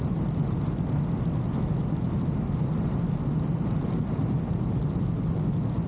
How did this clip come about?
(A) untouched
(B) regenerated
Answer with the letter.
A